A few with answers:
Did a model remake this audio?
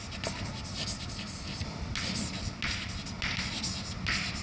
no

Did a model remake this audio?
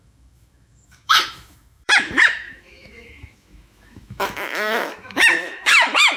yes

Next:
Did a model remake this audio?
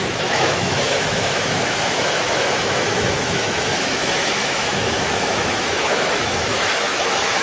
yes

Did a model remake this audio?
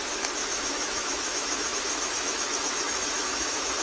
yes